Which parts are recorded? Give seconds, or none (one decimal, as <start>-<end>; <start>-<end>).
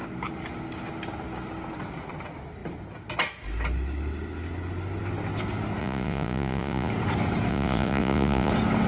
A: 0.0-5.8; 6.9-7.5; 8.5-8.9